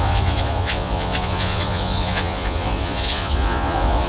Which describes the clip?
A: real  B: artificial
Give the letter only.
B